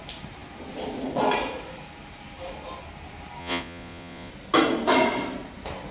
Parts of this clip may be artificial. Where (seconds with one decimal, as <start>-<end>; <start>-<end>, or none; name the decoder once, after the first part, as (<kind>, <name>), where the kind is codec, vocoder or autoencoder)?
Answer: 3.4-4.3 (vocoder, Vocos)